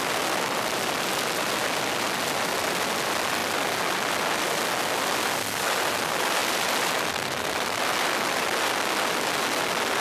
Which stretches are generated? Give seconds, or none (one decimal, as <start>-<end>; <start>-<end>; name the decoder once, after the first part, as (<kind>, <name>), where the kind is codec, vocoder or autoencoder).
none